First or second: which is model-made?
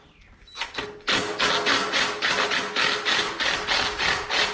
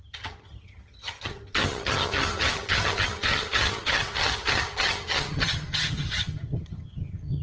second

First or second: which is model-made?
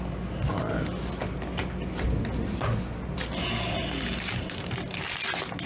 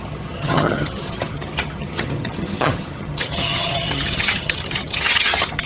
second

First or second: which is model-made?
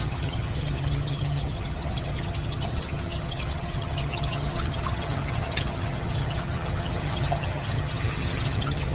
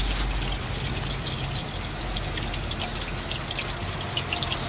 first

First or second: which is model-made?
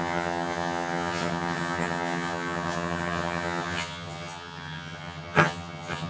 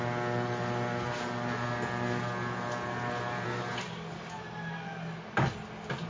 first